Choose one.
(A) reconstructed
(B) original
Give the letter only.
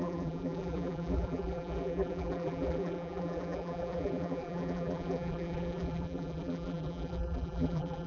A